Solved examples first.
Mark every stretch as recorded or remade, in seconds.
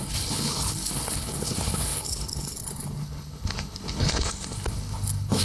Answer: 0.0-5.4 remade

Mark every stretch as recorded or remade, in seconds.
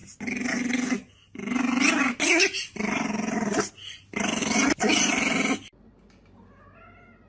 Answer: 0.0-7.3 recorded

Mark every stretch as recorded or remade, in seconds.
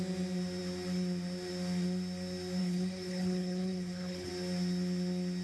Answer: 0.0-2.6 recorded; 2.6-4.3 remade; 4.3-5.4 recorded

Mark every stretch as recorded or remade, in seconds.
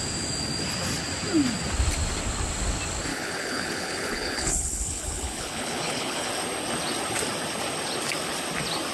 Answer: 0.0-3.1 recorded; 3.1-6.3 remade; 6.3-8.9 recorded